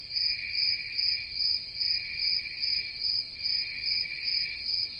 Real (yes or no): yes